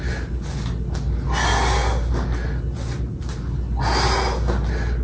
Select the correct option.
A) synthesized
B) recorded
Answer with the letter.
B